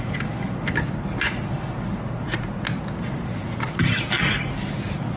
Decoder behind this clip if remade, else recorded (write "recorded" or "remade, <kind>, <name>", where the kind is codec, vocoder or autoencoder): recorded